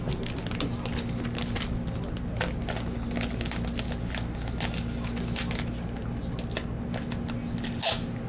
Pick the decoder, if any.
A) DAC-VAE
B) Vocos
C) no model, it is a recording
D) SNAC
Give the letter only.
C